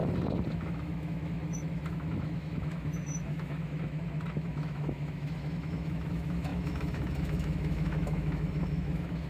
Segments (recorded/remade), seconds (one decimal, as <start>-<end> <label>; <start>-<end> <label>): 0.0-0.5 recorded; 0.5-9.3 remade